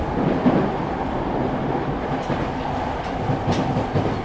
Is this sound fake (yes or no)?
no